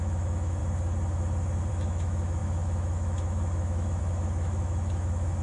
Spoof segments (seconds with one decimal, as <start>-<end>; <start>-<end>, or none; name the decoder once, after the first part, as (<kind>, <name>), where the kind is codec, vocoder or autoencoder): 0.0-0.6 (autoencoder, DAC-VAE); 1.7-5.4